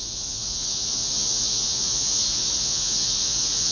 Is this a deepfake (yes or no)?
yes